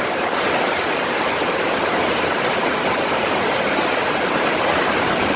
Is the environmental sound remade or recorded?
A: recorded